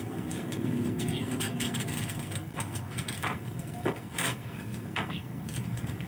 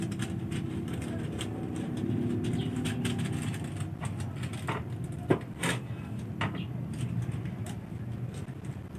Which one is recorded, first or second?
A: second